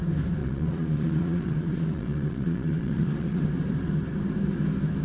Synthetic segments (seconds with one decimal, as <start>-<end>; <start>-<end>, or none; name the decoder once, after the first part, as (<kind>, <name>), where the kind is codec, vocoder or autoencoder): 0.4-3.4 (vocoder, Vocos)